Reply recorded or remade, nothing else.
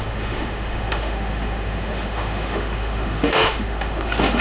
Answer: remade